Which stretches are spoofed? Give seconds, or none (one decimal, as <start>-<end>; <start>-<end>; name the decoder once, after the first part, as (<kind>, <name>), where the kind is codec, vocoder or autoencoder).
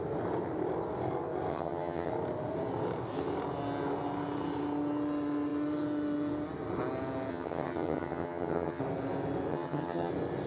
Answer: 1.5-2.1 (vocoder, HiFi-GAN); 7.3-8.8; 9.5-10.1